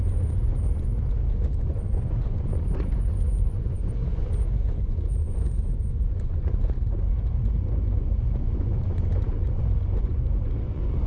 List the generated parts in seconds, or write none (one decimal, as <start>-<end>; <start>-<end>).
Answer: 0.0-0.9; 1.6-11.1